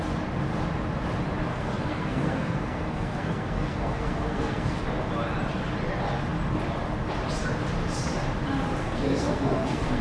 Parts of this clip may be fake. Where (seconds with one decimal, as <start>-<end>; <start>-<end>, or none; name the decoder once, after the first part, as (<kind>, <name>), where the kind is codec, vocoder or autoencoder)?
1.5-4.8 (codec, SNAC); 8.8-10.0